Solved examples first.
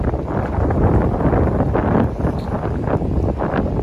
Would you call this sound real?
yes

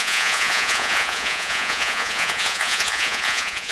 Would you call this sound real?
no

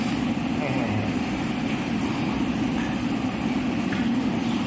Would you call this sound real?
yes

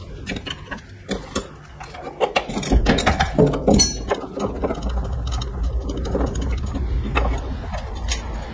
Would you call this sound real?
yes